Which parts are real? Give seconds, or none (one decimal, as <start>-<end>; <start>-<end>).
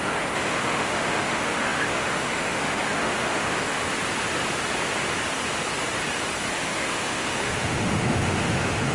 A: 3.8-6.5